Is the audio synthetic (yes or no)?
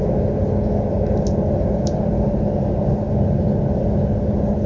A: no